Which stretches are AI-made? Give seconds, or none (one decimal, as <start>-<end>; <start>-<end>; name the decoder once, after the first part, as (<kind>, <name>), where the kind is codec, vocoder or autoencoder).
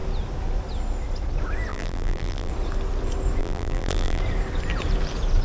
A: 1.7-2.5 (vocoder, BigVGAN v2); 3.4-4.2